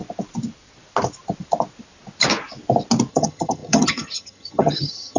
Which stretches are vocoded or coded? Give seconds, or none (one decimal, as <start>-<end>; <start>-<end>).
3.1-5.2